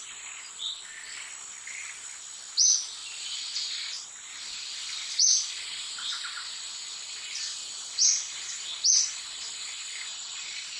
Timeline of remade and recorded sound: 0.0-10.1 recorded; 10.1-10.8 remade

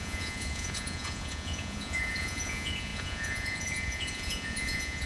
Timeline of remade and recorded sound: 0.0-5.1 remade